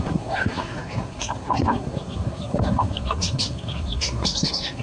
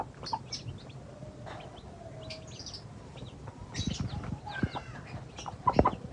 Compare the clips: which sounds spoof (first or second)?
first